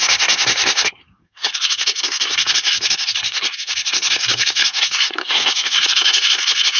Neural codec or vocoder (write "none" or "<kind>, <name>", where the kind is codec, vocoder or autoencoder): codec, SNAC